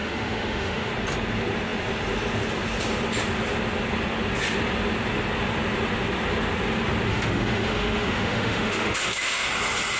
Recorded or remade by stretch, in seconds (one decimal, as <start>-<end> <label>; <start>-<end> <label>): 0.0-0.9 remade; 0.9-7.1 recorded; 7.1-9.5 remade; 9.5-10.0 recorded